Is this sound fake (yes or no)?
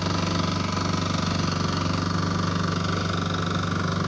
no